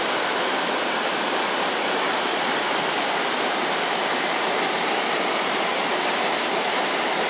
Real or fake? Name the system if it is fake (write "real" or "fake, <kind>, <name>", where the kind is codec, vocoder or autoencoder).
fake, vocoder, BigVGAN v2